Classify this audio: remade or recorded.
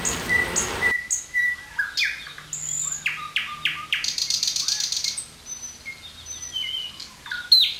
recorded